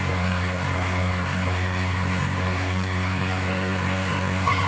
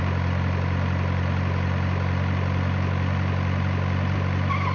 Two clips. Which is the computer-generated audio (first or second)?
first